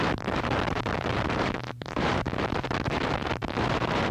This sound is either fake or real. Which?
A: fake